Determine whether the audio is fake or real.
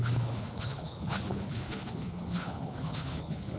fake